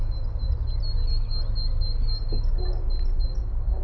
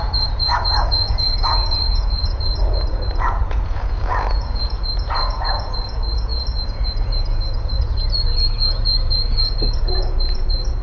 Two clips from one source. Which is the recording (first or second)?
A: first